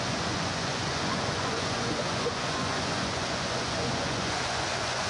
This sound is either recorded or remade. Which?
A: remade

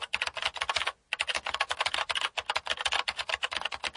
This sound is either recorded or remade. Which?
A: recorded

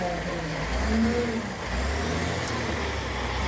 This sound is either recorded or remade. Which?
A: recorded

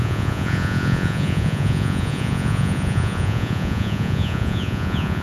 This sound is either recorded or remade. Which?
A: remade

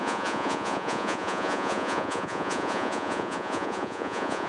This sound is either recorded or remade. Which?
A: remade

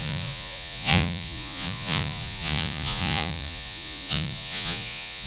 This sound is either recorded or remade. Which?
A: remade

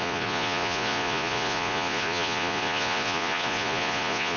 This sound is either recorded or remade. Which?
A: remade